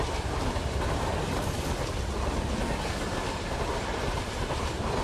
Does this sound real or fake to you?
fake